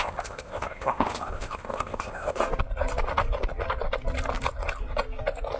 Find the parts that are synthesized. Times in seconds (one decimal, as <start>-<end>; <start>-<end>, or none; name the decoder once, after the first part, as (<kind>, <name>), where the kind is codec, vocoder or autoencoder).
0.0-2.4 (codec, ZipCodec)